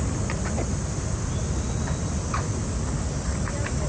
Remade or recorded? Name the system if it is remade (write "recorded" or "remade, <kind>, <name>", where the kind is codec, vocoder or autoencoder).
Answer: recorded